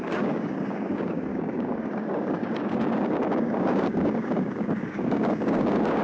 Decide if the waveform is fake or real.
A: fake